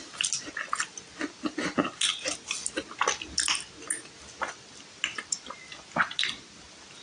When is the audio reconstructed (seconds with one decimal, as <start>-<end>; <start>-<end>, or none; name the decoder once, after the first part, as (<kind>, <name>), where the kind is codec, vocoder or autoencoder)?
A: none